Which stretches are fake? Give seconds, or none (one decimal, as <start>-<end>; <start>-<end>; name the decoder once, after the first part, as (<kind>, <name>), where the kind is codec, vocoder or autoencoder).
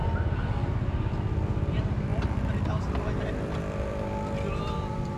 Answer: 1.7-5.2 (vocoder, BigVGAN v2)